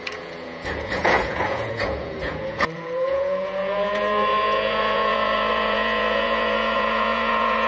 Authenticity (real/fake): fake